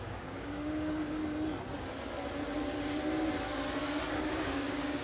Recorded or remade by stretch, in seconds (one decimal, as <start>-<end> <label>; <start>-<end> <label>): 0.0-1.2 remade; 1.2-4.2 recorded; 4.2-5.0 remade